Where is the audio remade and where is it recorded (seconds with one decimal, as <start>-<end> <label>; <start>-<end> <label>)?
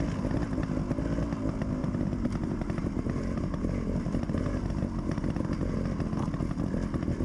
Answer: 0.0-1.8 recorded; 1.8-5.7 remade; 5.7-7.2 recorded